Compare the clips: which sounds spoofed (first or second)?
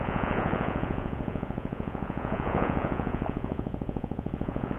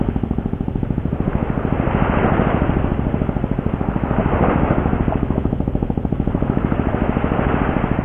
first